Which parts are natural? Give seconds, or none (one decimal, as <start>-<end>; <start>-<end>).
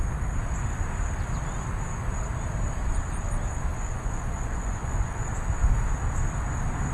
0.0-3.7; 5.3-6.9